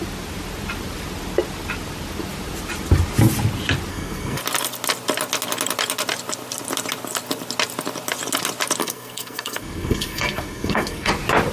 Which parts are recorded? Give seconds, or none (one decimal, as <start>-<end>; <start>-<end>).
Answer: 0.0-3.9; 4.4-8.8; 11.1-11.5